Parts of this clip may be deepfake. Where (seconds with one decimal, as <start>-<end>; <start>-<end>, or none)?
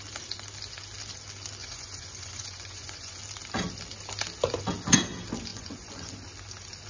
1.6-3.2; 5.5-6.1